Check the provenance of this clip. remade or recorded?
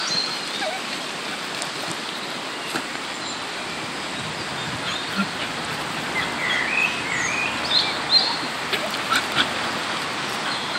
recorded